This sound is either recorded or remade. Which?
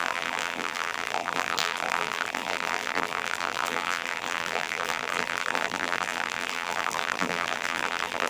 remade